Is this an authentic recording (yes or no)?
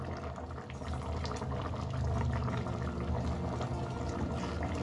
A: yes